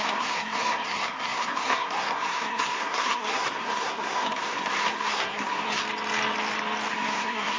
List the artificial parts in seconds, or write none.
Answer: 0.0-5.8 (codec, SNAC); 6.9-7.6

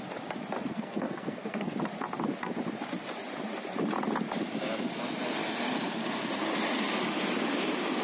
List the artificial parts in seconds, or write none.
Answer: 0.7-1.7 (codec, SNAC)

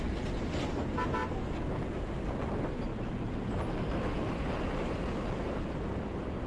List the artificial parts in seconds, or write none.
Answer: none

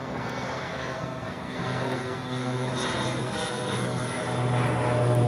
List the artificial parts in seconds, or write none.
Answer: 0.0-2.7 (codec, SNAC); 3.2-4.2

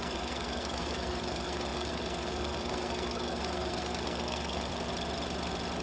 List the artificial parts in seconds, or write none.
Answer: 0.0-4.7 (codec, SNAC)

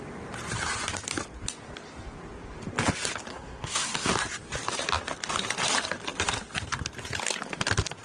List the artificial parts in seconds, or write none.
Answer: 3.3-4.1 (codec, SNAC)